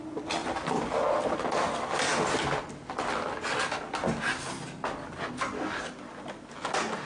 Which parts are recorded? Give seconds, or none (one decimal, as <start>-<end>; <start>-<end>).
0.0-7.1